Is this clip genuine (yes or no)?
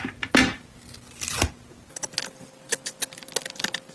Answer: yes